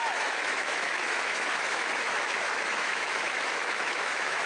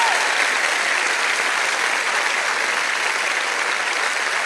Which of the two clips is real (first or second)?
second